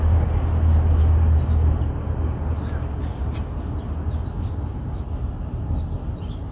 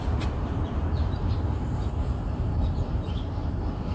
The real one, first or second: first